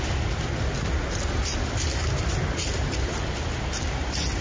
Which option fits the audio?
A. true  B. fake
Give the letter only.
A